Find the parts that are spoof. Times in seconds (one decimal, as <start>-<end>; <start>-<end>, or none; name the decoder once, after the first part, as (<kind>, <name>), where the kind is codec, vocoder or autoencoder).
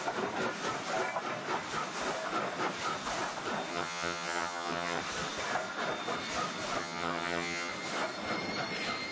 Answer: 3.7-5.0 (vocoder, HiFi-GAN); 6.8-7.7